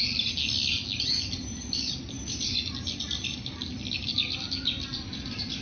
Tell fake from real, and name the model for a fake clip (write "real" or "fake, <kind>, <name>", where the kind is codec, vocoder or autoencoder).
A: real